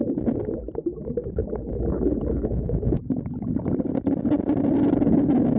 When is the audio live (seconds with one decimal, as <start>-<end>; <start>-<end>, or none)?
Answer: 0.0-5.6